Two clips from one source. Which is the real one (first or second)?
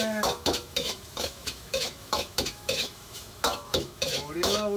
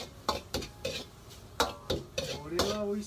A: second